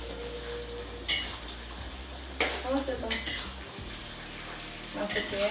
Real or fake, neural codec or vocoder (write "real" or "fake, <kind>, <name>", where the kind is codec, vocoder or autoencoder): real